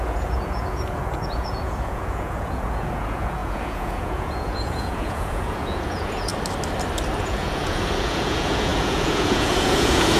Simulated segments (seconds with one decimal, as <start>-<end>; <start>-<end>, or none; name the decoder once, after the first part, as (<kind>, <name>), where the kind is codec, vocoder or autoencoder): 0.0-6.3 (vocoder, Vocos); 7.2-10.2